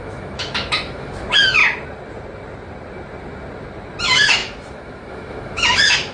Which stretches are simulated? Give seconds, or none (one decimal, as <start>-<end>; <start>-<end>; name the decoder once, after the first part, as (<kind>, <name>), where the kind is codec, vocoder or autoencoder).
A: 0.0-1.6 (autoencoder, DAC-VAE); 4.0-6.1